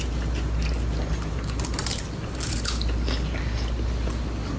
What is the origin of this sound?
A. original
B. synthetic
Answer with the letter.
A